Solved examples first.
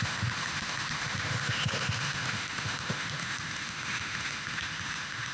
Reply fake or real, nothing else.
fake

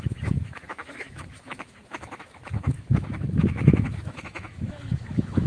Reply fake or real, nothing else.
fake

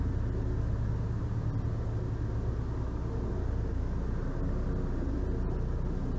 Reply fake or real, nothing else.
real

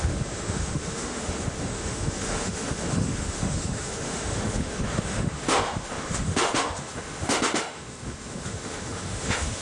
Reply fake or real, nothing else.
fake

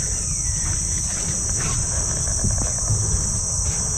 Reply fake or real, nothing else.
real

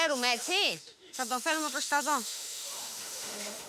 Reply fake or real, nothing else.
fake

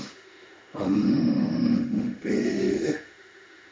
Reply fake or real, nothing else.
fake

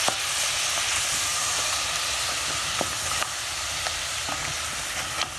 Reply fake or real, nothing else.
real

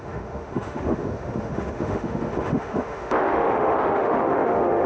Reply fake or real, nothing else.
fake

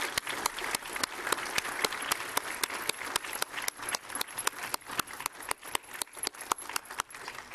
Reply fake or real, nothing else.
real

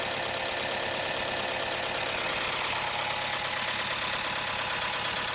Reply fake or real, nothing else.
real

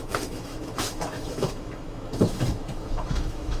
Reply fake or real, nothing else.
fake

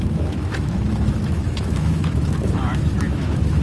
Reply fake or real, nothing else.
fake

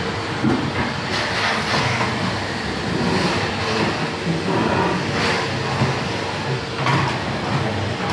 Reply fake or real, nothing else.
real